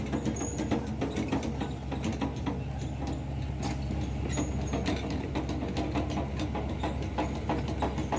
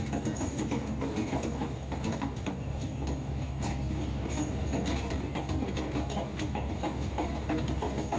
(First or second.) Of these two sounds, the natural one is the first